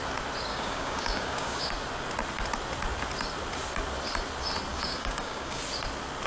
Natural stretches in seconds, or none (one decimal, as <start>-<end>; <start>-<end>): 0.0-0.5; 1.7-4.7; 5.6-6.3